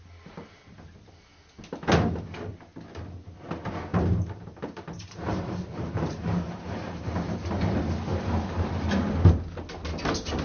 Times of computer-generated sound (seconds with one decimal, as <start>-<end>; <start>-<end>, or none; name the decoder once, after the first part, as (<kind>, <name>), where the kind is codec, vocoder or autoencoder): 3.9-7.4 (vocoder, BigVGAN v2); 8.1-8.7